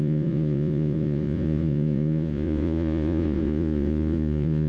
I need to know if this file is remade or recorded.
remade